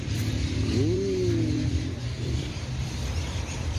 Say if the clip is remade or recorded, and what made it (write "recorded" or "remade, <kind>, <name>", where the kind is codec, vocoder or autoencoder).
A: remade, vocoder, BigVGAN v2